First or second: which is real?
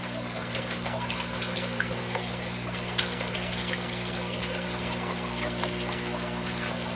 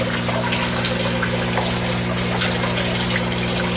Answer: second